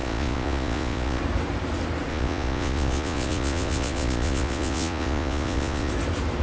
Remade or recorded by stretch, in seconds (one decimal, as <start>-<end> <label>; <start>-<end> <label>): 0.0-1.2 remade; 1.2-2.1 recorded; 2.1-5.9 remade; 5.9-6.4 recorded